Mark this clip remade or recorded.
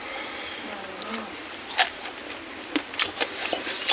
recorded